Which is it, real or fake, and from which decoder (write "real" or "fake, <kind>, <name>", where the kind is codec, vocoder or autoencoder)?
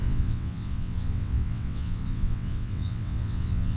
fake, vocoder, WaveNeXt